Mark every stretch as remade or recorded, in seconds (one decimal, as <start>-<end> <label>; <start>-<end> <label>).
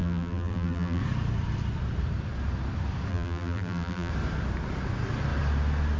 0.0-1.0 remade; 1.0-3.1 recorded; 3.1-4.1 remade; 4.1-6.0 recorded